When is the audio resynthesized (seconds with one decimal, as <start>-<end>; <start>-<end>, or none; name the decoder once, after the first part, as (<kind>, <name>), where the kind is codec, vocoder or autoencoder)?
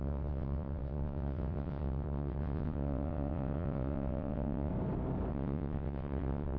0.0-4.7 (vocoder, WaveNeXt); 5.3-6.6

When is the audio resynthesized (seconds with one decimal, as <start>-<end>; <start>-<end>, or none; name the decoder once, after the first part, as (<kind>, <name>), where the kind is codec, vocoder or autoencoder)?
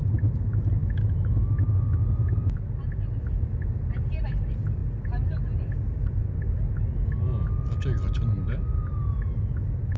0.8-1.5 (autoencoder, DAC-VAE)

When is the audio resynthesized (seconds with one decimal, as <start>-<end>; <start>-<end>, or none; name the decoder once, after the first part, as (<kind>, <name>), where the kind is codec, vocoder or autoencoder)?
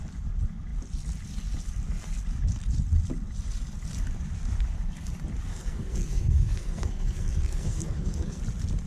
5.5-8.4 (codec, SNAC)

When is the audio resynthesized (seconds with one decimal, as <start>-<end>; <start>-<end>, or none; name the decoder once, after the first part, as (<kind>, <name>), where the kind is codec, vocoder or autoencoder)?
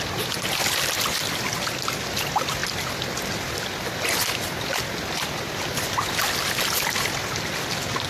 none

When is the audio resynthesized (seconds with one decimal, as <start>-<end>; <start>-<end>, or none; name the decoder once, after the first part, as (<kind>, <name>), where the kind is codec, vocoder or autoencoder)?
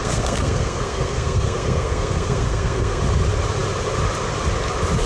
0.0-3.0 (codec, SNAC)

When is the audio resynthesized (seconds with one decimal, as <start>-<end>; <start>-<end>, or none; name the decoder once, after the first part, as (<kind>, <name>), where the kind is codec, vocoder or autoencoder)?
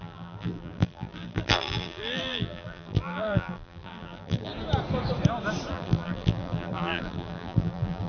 0.0-4.5 (vocoder, BigVGAN v2); 5.7-8.1